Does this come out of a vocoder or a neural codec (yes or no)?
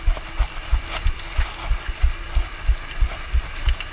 no